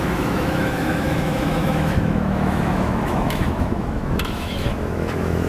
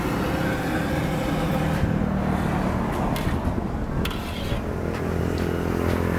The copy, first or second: first